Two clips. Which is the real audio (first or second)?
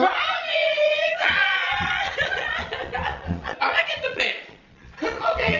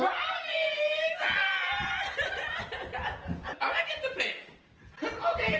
second